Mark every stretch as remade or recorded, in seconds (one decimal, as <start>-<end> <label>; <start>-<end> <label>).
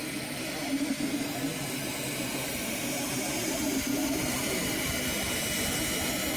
0.0-6.4 recorded